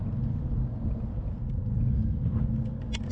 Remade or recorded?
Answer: recorded